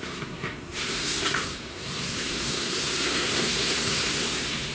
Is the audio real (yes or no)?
no